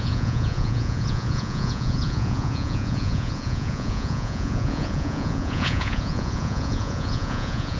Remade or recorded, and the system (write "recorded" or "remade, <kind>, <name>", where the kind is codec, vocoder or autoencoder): remade, vocoder, Vocos